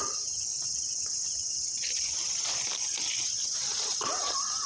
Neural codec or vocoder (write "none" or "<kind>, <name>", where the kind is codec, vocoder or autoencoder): none